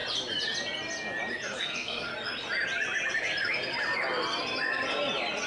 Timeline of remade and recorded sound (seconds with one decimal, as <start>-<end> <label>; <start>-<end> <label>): 0.0-1.6 recorded; 1.6-2.1 remade; 2.1-5.5 recorded